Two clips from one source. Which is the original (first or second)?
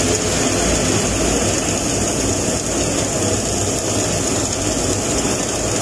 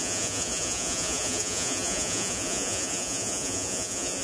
first